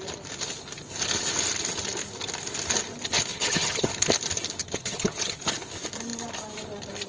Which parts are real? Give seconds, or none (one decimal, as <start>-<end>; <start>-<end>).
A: 0.0-3.3; 3.9-4.6; 5.4-7.1